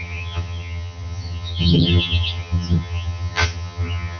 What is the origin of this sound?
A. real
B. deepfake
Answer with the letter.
B